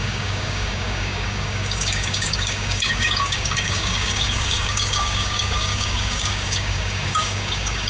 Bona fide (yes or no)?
no